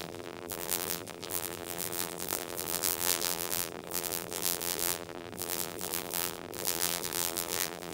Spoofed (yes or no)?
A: yes